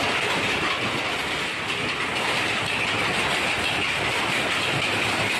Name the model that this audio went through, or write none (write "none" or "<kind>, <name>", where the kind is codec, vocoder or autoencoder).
none